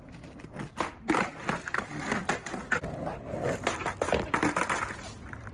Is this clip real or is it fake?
real